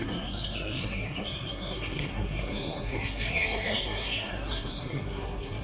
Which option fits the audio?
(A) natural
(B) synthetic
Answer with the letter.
B